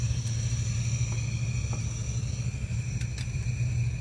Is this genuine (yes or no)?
yes